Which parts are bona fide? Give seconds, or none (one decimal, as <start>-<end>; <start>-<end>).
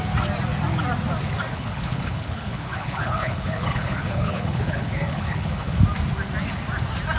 0.0-1.5; 5.8-7.2